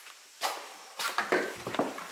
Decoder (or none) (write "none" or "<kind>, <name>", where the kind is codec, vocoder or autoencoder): none